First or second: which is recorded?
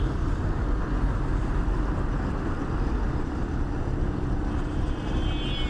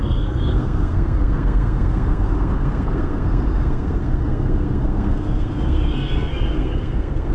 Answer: first